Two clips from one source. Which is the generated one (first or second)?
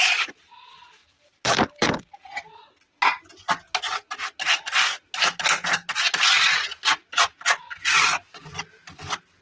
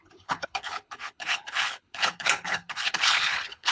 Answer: second